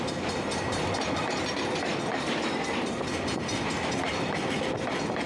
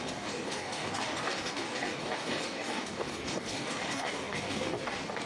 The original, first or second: first